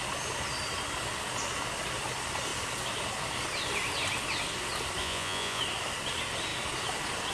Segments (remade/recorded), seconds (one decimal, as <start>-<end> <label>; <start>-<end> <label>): 0.0-5.0 recorded; 5.0-5.6 remade; 5.6-7.3 recorded